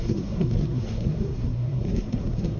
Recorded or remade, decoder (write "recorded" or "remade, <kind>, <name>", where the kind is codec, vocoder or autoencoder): remade, codec, SNAC